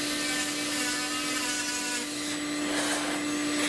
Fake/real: real